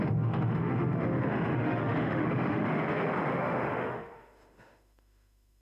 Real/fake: fake